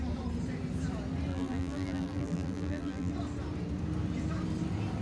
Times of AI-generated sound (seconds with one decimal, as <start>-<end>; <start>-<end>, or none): 1.3-3.1